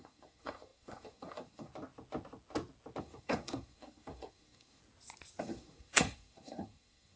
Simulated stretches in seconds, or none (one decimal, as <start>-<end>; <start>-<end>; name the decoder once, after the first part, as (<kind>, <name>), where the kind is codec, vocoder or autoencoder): 0.0-1.7 (codec, SNAC); 3.0-4.8; 5.4-7.2